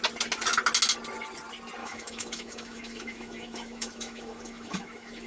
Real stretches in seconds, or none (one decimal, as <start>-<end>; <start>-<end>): 0.0-1.8